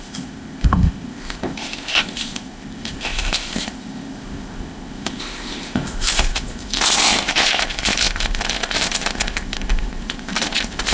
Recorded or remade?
remade